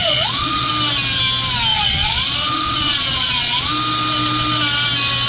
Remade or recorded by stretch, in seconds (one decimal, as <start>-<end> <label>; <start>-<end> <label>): 0.0-0.7 remade; 0.7-1.7 recorded; 1.7-3.7 remade; 3.7-5.3 recorded